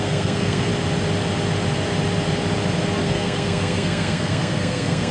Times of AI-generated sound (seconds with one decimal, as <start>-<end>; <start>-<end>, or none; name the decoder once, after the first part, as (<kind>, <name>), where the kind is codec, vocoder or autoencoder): 0.0-0.7 (codec, SNAC); 3.0-5.1